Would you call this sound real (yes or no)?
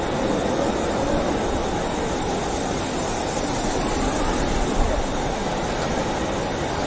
yes